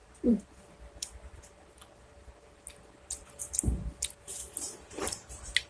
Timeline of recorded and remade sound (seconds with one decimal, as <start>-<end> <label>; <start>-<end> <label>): 0.0-5.7 remade